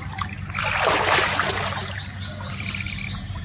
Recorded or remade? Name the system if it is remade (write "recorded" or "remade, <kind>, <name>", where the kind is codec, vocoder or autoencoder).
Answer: recorded